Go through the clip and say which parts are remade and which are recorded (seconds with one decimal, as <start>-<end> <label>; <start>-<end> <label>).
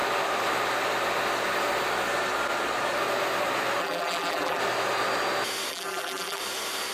0.0-3.8 recorded; 3.8-4.6 remade; 4.6-5.7 recorded; 5.7-6.4 remade; 6.4-6.9 recorded